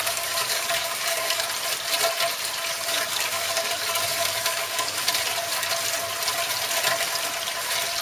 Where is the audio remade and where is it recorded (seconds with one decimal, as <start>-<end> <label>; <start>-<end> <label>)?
0.0-1.4 remade; 1.4-2.9 recorded; 2.9-5.1 remade; 5.1-8.0 recorded